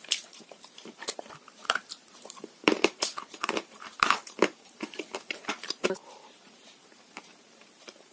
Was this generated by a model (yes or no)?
yes